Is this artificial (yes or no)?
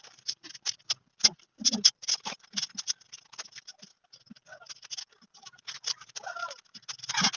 no